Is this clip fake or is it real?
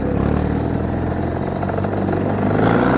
real